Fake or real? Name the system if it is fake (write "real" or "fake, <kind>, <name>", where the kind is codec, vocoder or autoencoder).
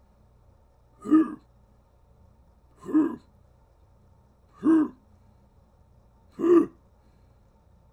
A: fake, vocoder, BigVGAN v2